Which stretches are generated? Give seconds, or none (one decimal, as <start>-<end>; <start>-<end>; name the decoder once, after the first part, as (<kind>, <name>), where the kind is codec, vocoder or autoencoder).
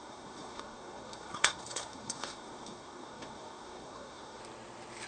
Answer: 0.0-4.4 (codec, SNAC)